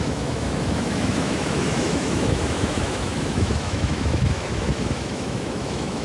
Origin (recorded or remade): remade